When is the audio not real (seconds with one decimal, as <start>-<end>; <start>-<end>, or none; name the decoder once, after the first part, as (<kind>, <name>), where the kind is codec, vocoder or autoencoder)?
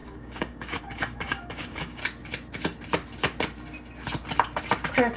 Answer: 0.0-2.0 (codec, DAC)